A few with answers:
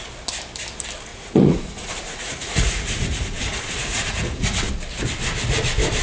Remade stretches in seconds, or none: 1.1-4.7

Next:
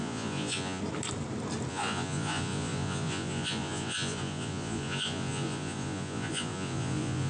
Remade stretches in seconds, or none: 0.0-0.8; 1.7-7.3